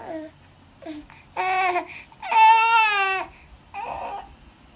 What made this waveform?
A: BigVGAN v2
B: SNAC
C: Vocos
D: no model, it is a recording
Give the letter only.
D